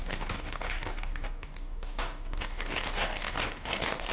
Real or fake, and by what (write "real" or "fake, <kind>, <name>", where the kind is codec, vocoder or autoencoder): fake, codec, DAC